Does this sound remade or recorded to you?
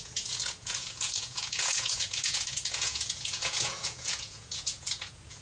remade